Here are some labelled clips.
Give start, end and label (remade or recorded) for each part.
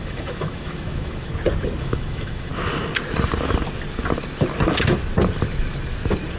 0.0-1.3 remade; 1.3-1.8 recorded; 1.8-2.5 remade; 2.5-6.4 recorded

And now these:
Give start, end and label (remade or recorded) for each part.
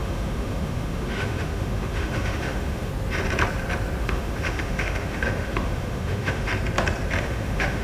0.0-2.9 remade; 2.9-4.0 recorded; 4.0-6.5 remade; 6.5-7.2 recorded; 7.2-7.8 remade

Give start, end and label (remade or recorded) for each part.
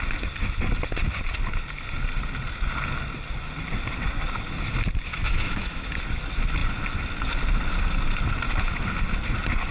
0.0-5.1 recorded; 5.1-5.9 remade; 5.9-9.7 recorded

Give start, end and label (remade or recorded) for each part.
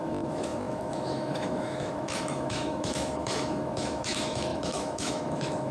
0.0-5.7 remade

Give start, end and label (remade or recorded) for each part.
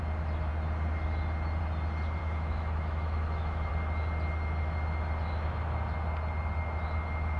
0.0-2.2 recorded; 2.2-3.7 remade; 3.7-7.4 recorded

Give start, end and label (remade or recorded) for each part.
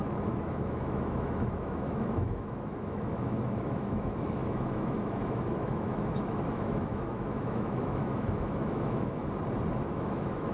0.0-9.2 remade; 9.2-9.9 recorded; 9.9-10.5 remade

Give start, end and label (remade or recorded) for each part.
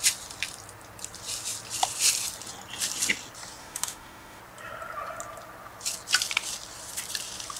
0.0-3.6 recorded; 3.6-4.4 remade; 4.4-7.6 recorded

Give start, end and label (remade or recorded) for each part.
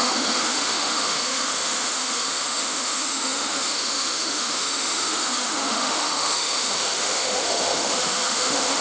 0.0-8.8 remade